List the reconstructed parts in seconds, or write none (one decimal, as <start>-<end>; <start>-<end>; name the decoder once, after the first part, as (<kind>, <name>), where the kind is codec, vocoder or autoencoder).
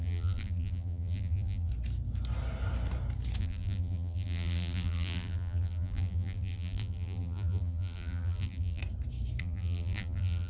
0.0-1.7 (vocoder, BigVGAN v2); 3.4-8.8; 9.4-10.5